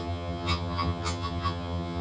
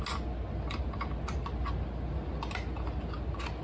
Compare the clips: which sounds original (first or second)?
second